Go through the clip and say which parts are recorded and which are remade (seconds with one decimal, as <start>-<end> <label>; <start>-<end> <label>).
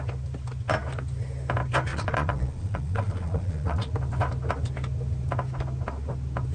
0.0-1.9 recorded; 1.9-3.9 remade; 3.9-6.5 recorded